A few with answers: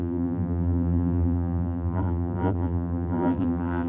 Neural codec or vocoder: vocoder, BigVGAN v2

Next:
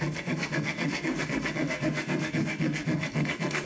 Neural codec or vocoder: codec, SNAC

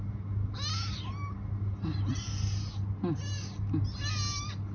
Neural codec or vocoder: none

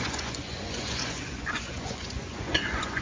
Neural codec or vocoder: vocoder, Vocos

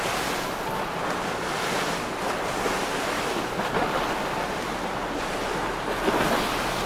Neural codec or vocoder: none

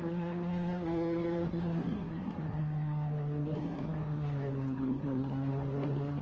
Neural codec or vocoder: codec, SNAC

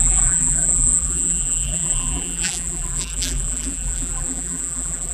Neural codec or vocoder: vocoder, BigVGAN v2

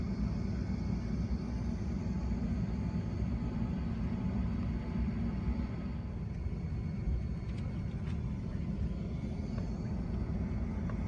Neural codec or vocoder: none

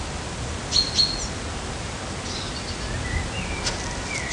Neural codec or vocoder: none